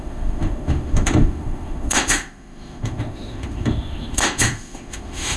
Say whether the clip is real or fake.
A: fake